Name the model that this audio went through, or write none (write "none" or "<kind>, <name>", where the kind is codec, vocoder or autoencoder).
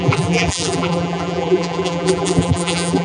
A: vocoder, BigVGAN v2